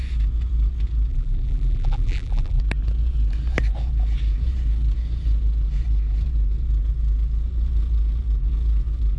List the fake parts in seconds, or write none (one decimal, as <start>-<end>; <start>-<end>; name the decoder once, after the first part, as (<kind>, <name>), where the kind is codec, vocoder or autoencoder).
1.1-2.6 (vocoder, BigVGAN v2)